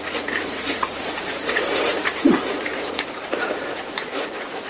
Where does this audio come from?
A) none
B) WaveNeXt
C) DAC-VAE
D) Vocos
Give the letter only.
D